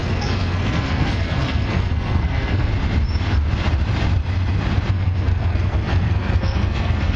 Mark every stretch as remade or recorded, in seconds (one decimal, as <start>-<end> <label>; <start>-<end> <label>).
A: 0.0-2.7 remade; 2.7-4.9 recorded; 4.9-7.2 remade